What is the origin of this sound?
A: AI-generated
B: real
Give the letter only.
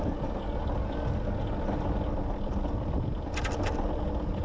B